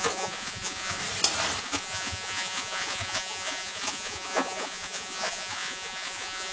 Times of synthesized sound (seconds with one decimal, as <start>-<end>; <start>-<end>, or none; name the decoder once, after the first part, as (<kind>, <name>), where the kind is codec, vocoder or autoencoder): 0.0-1.0 (vocoder, Vocos); 1.6-6.5